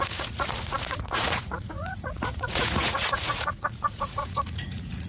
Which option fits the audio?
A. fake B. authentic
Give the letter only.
A